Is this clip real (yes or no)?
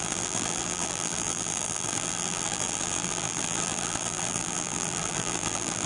no